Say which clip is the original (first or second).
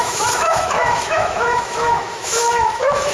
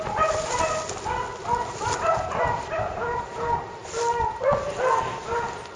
second